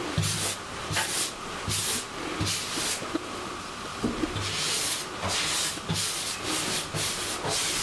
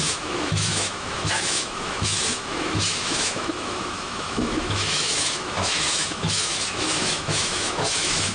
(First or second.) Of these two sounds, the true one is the first